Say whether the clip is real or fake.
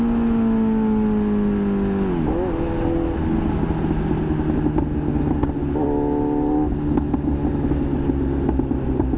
real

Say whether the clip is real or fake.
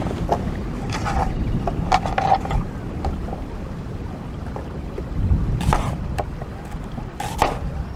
real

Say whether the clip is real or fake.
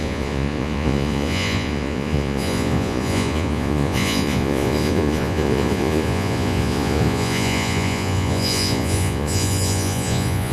fake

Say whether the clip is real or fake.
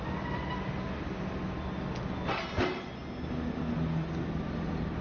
real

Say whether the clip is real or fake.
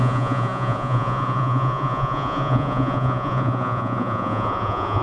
fake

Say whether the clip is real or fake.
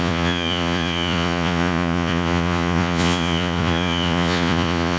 fake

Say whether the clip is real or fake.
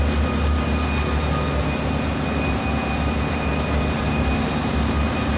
real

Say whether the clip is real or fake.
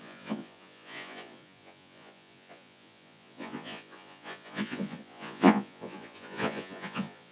fake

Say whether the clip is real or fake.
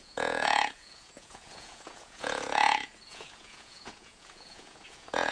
fake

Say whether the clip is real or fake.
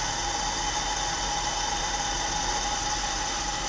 real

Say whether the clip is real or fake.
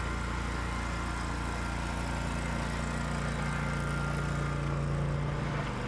real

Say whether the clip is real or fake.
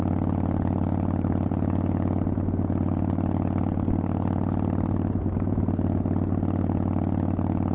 real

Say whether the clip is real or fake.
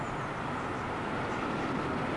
real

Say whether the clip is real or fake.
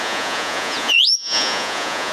fake